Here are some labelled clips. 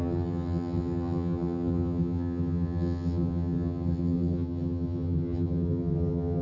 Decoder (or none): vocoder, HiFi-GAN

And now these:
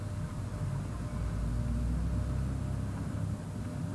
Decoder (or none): none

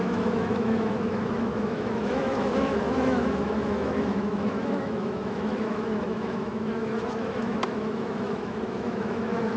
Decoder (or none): autoencoder, DAC-VAE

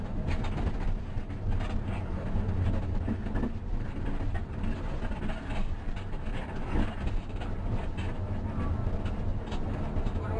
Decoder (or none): none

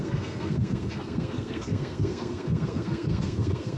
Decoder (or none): codec, SNAC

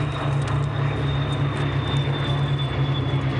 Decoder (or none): none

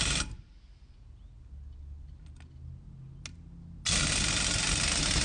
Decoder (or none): none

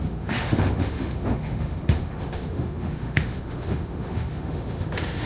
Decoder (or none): autoencoder, DAC-VAE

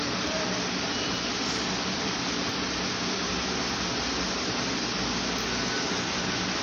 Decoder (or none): none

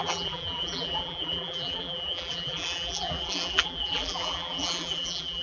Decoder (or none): vocoder, BigVGAN v2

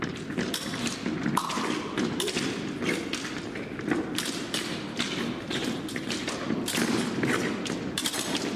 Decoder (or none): none